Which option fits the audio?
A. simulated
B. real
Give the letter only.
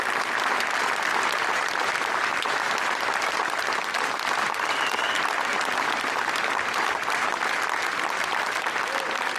B